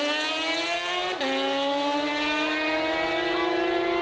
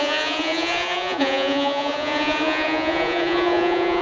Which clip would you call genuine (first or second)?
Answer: first